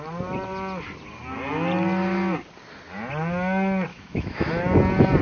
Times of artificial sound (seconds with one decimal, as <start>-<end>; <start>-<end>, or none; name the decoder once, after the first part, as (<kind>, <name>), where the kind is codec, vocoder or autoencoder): 3.9-4.5 (autoencoder, DAC-VAE)

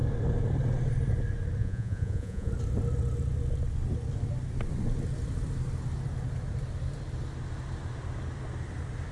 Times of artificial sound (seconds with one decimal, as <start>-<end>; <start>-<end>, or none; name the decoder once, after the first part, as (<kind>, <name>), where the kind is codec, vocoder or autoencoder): 1.6-2.5 (vocoder, Vocos)

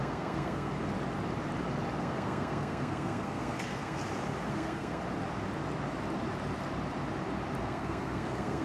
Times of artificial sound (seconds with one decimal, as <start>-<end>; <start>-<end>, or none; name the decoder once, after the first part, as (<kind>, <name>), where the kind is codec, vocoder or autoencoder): 0.0-0.7 (codec, SNAC); 2.0-4.0; 4.5-5.0; 7.6-8.6